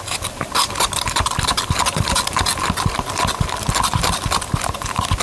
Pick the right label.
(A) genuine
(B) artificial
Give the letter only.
B